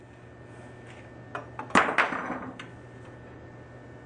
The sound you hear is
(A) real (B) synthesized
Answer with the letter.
A